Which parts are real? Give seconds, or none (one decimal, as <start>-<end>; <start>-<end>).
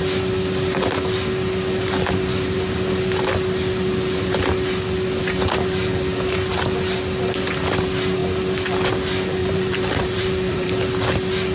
0.0-9.4; 10.7-11.5